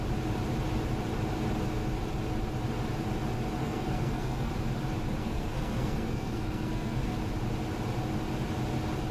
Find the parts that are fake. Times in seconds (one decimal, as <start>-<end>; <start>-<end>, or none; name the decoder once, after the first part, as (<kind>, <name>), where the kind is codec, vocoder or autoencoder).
3.6-4.5 (codec, SNAC); 5.2-7.2